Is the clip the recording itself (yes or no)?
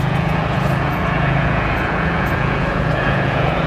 no